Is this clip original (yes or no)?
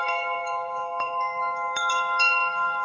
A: no